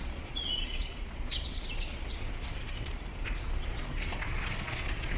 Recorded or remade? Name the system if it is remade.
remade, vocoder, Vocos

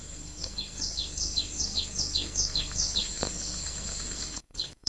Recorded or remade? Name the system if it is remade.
remade, codec, SNAC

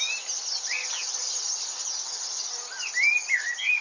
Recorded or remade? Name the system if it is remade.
recorded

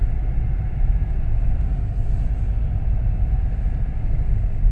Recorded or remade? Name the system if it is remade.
recorded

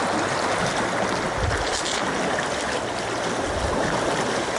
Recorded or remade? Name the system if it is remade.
recorded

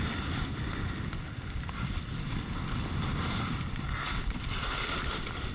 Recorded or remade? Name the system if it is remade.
recorded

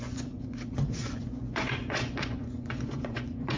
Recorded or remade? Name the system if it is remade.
remade, vocoder, Vocos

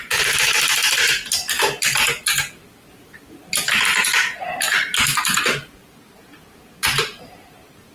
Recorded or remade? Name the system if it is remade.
remade, vocoder, BigVGAN v2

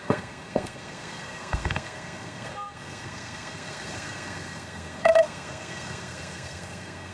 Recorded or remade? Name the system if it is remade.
remade, codec, SNAC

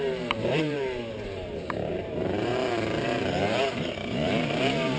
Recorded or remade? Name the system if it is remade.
remade, vocoder, BigVGAN v2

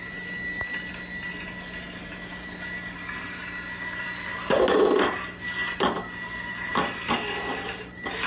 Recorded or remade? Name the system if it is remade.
recorded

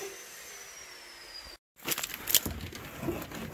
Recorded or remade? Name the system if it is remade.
recorded